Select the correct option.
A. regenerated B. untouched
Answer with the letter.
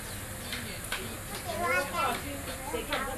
B